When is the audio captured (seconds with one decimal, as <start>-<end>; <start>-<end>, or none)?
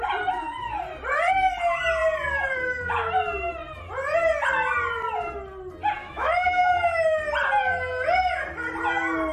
0.0-6.0; 7.2-9.3